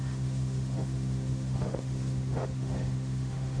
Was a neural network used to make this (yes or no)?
yes